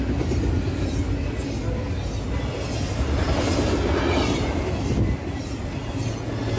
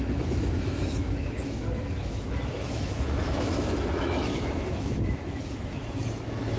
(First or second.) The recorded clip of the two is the first